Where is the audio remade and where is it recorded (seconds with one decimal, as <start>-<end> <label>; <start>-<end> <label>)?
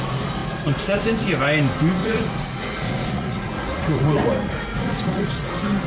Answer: 0.0-2.0 recorded; 2.0-5.5 remade; 5.5-5.9 recorded